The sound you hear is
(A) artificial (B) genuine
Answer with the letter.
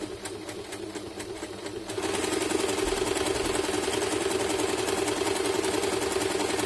B